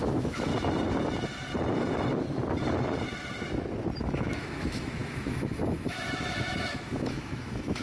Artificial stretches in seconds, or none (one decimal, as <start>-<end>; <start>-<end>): 0.0-0.5; 4.0-7.8